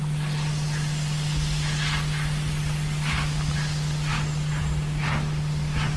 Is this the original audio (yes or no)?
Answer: yes